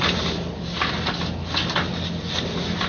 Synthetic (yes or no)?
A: no